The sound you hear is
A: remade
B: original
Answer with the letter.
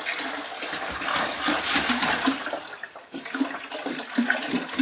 B